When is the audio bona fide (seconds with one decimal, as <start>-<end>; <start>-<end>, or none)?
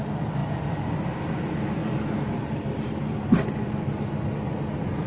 0.4-1.0